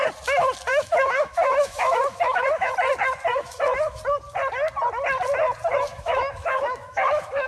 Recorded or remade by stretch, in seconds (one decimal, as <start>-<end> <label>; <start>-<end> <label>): 0.0-0.7 recorded; 0.7-2.7 remade; 2.7-3.3 recorded; 3.3-4.0 remade; 4.0-5.9 recorded; 5.9-7.5 remade